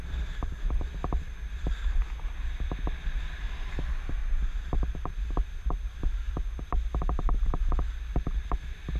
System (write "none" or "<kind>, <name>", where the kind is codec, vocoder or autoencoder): none